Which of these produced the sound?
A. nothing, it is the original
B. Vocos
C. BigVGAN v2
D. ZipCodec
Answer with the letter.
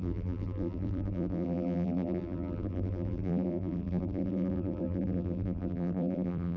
C